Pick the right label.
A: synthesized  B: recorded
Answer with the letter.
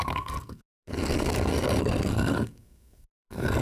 A